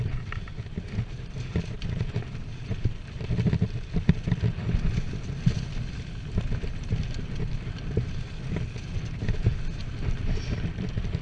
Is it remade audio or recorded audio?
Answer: recorded